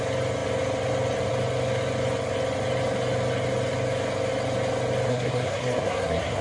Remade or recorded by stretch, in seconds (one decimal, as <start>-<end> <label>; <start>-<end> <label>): 0.0-5.1 recorded; 5.1-6.4 remade